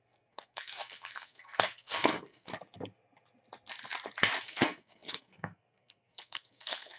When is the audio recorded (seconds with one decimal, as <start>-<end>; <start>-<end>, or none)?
2.5-4.4